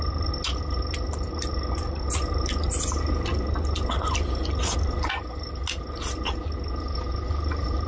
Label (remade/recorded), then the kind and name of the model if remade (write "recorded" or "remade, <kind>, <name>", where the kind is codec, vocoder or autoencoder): recorded